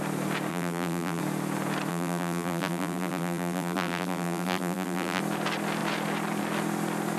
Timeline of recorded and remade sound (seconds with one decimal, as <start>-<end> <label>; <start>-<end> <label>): 0.0-0.5 recorded; 0.5-1.2 remade; 1.2-1.9 recorded; 1.9-5.2 remade; 5.2-7.2 recorded